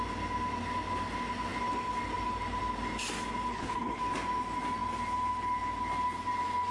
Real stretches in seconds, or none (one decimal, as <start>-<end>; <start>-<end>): 0.0-3.5; 4.0-6.7